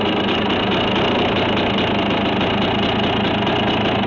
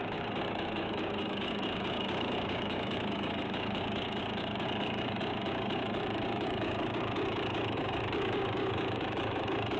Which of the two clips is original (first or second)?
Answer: first